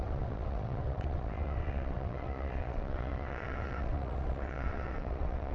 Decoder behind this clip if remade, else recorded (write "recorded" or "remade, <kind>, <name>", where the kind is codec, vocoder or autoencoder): remade, vocoder, WaveNeXt